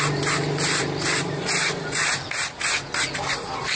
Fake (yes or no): no